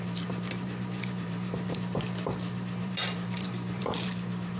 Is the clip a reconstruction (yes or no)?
yes